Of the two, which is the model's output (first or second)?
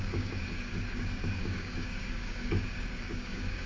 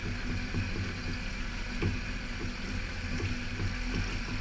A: first